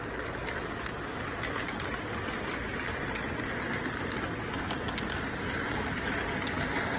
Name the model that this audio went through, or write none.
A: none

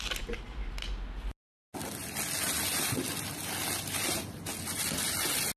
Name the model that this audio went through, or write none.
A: none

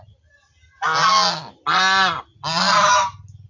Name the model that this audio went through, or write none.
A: none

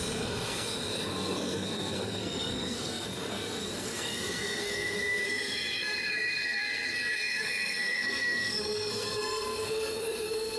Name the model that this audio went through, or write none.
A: codec, SNAC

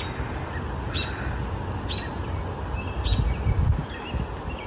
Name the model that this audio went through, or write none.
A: none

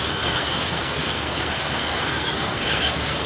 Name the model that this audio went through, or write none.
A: codec, SNAC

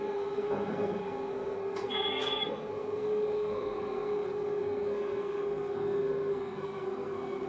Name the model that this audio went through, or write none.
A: codec, SNAC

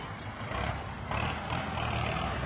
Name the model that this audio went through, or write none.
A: none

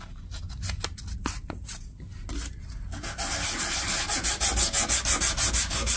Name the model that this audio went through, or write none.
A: none